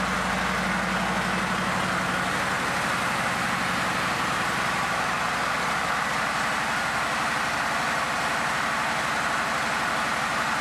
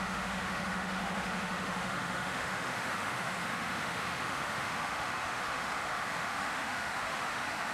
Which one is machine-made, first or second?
second